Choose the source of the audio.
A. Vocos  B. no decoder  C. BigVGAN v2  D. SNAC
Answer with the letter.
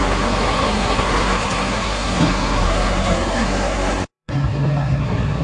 D